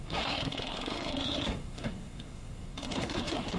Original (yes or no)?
no